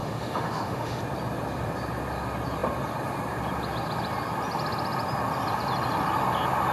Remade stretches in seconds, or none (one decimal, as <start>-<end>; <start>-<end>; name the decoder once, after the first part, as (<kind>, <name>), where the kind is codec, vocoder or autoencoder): 0.0-1.0 (autoencoder, DAC-VAE)